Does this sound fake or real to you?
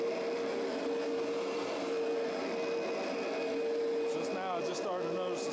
real